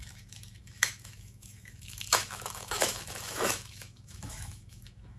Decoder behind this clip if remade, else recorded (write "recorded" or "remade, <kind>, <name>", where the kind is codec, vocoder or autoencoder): remade, autoencoder, DAC-VAE